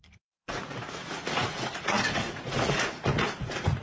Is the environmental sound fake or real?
fake